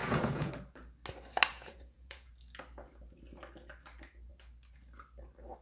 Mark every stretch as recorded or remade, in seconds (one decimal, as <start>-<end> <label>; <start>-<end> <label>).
0.0-0.5 remade; 0.5-1.5 recorded; 1.5-2.3 remade; 2.3-5.6 recorded